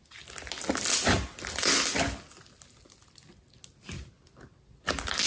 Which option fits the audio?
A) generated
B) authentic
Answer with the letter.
B